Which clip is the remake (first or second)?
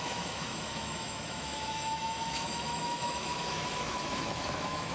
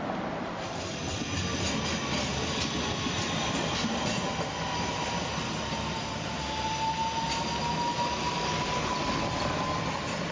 first